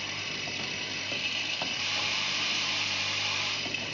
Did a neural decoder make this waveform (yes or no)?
yes